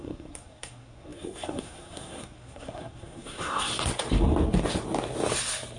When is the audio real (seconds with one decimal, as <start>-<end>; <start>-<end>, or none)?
3.7-5.8